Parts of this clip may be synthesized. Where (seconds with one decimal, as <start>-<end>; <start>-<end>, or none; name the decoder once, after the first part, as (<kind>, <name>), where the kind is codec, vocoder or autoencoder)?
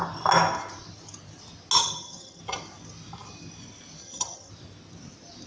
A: 1.8-2.4 (vocoder, HiFi-GAN); 4.0-4.5